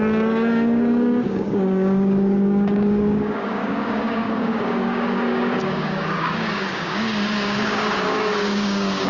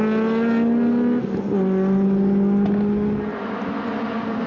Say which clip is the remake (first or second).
first